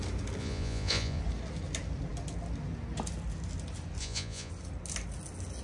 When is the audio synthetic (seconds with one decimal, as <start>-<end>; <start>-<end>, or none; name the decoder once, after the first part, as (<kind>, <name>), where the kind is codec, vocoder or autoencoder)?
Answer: 0.4-1.2 (vocoder, Vocos); 4.0-4.5